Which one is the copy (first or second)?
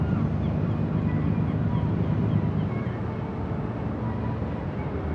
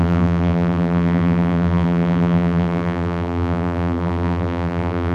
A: second